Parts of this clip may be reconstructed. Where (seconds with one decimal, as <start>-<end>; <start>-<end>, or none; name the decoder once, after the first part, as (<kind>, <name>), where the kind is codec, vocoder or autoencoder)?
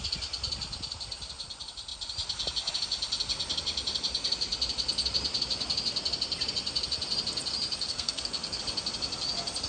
7.9-8.6 (codec, SNAC)